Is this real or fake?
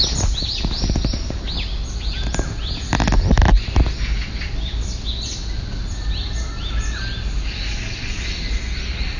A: real